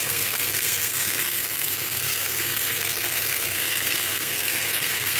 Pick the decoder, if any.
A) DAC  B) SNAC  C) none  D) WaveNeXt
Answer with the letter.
B